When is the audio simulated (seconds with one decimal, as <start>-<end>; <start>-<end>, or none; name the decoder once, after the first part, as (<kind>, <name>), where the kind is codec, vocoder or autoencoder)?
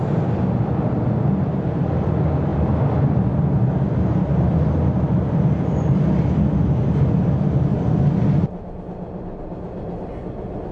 none